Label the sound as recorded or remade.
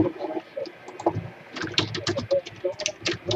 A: recorded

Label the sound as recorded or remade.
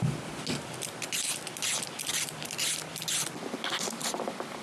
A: recorded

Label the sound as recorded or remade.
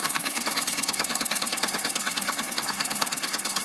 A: remade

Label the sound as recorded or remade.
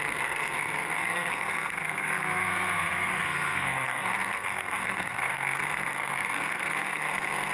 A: remade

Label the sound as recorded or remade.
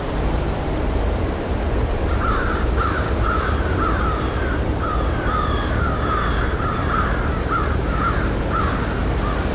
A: remade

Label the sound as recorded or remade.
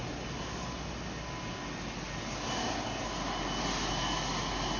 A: recorded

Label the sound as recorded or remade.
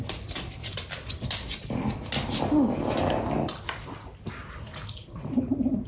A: recorded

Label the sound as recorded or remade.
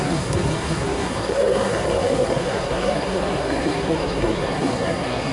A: remade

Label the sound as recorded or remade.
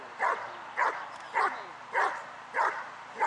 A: recorded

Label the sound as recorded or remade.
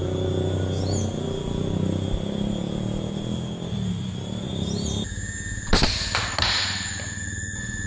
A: recorded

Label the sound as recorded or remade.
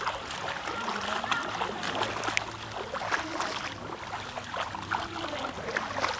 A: recorded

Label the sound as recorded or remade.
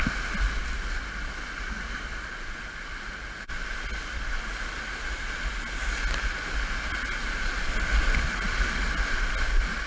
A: recorded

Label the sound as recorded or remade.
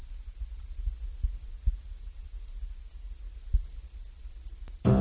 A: recorded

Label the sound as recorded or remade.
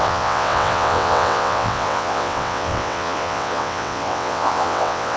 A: remade